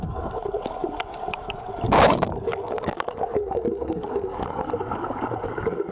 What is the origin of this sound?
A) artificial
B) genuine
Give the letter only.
A